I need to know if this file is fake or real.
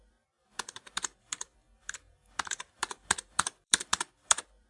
fake